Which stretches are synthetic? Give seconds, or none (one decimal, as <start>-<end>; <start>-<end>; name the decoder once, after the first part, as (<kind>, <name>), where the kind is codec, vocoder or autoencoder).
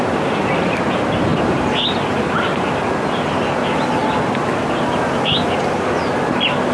none